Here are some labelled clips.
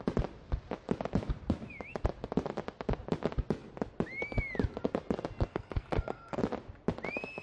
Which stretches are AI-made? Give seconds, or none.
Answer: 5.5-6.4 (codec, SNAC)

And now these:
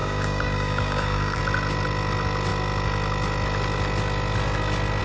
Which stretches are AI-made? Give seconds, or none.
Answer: 0.0-1.4 (codec, DAC)

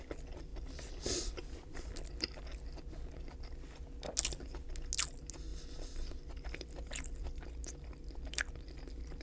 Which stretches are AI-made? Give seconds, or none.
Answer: 0.5-2.1 (vocoder, BigVGAN v2); 5.5-8.5

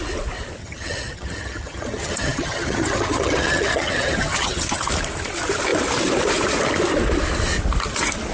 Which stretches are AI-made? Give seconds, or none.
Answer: 0.6-4.9 (vocoder, HiFi-GAN)